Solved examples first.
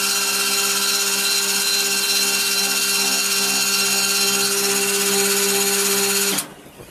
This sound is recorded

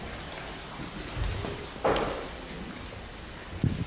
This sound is recorded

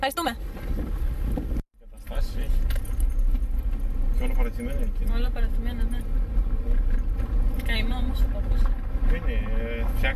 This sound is recorded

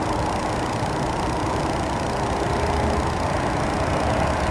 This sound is recorded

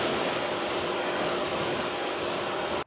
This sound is recorded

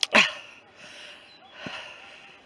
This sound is recorded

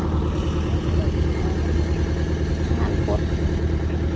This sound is recorded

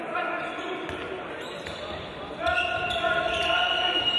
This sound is recorded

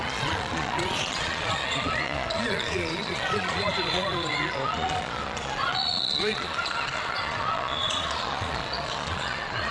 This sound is remade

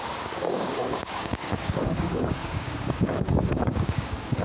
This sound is remade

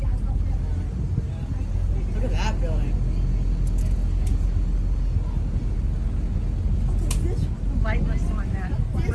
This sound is recorded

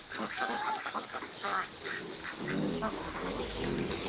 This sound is remade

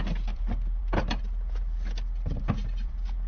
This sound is recorded